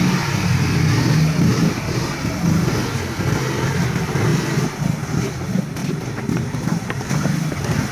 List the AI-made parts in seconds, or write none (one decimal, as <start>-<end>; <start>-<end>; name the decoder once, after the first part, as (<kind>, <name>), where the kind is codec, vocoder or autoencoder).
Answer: 1.5-3.6 (vocoder, BigVGAN v2); 4.3-5.1; 5.8-7.5